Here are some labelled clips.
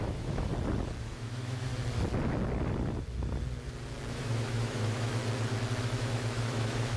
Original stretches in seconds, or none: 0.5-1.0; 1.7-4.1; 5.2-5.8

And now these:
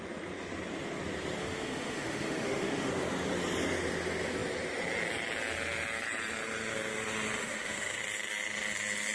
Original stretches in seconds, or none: 0.0-1.4; 2.9-7.4; 8.0-9.1